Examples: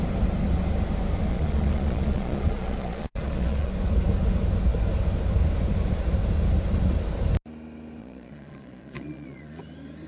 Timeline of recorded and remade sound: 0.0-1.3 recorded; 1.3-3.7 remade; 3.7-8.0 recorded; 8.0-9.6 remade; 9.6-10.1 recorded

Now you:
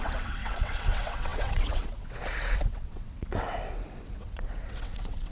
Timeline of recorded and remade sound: 0.0-5.3 remade

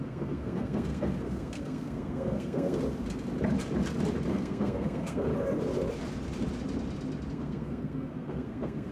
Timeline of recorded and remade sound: 0.0-2.8 remade; 2.8-4.3 recorded; 4.3-5.3 remade; 5.3-7.3 recorded; 7.3-8.9 remade

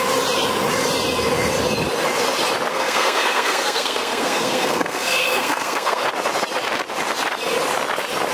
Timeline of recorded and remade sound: 0.0-2.7 recorded; 2.7-6.0 remade; 6.0-8.3 recorded